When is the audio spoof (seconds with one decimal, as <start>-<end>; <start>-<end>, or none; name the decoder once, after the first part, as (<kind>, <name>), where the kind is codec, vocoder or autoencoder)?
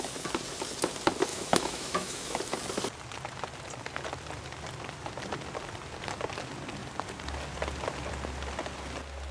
1.3-2.4 (autoencoder, DAC-VAE)